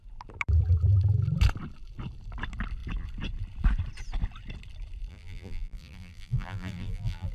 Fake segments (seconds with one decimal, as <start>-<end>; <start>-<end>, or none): 5.1-7.3